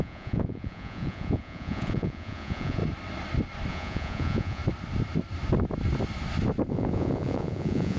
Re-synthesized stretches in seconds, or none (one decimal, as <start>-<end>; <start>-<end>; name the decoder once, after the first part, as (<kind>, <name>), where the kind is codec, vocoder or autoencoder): 0.0-2.8 (vocoder, Vocos); 3.7-4.6; 6.7-8.0